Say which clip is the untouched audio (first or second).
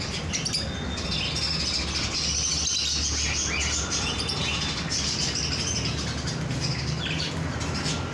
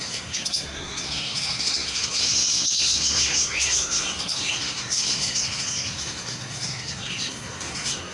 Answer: first